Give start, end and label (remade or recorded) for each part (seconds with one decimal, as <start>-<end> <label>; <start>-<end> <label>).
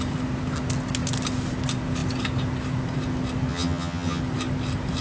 0.0-3.5 recorded; 3.5-4.2 remade; 4.2-5.0 recorded